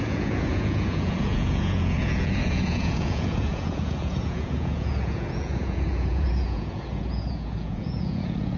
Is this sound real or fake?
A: fake